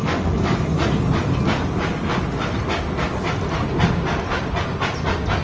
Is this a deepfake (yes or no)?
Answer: no